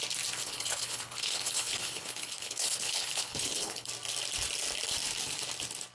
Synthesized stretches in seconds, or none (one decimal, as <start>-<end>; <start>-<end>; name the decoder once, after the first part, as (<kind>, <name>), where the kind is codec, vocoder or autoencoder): 0.4-3.9 (codec, HILCodec)